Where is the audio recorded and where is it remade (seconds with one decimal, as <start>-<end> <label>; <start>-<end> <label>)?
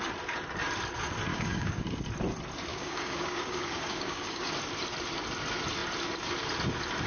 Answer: 0.0-1.3 recorded; 1.3-1.8 remade; 1.8-2.7 recorded; 2.7-4.5 remade; 4.5-7.1 recorded